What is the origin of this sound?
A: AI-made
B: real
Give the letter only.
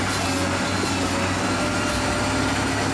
B